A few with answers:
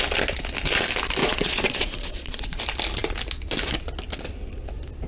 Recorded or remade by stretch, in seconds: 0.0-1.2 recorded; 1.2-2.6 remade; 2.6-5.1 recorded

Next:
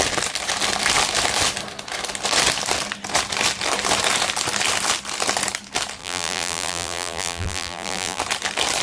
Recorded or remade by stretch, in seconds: 0.0-6.0 recorded; 6.0-8.2 remade; 8.2-8.8 recorded

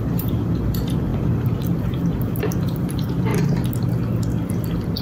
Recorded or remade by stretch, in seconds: 0.0-3.3 remade; 3.3-4.5 recorded; 4.5-5.0 remade

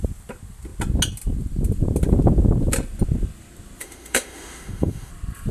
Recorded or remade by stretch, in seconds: 0.0-3.8 recorded; 3.8-5.1 remade; 5.1-5.5 recorded

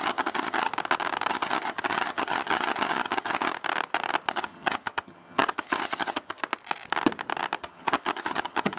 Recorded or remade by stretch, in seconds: 0.0-0.7 remade; 0.7-1.3 recorded; 1.3-3.5 remade; 3.5-4.3 recorded; 4.3-6.4 remade; 6.4-7.6 recorded; 7.6-8.8 remade

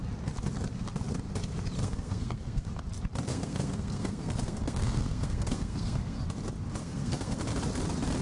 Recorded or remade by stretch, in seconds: 0.0-1.8 recorded; 1.8-2.7 remade; 2.7-3.3 recorded; 3.3-6.2 remade; 6.2-6.8 recorded; 6.8-7.4 remade; 7.4-8.2 recorded

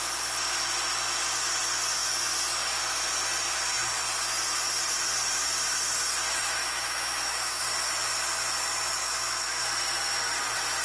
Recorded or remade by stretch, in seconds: 0.0-6.6 recorded; 6.6-7.6 remade; 7.6-9.0 recorded; 9.0-9.6 remade; 9.6-10.8 recorded